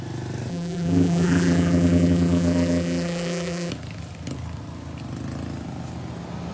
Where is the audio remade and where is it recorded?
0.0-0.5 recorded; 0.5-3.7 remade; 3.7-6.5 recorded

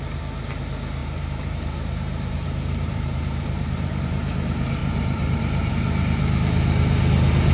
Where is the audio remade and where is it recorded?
0.0-1.0 recorded; 1.0-4.0 remade; 4.0-4.8 recorded; 4.8-5.7 remade; 5.7-7.5 recorded

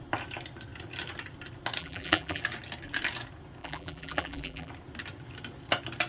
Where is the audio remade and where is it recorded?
0.0-1.8 recorded; 1.8-2.4 remade; 2.4-3.6 recorded; 3.6-4.7 remade; 4.7-6.1 recorded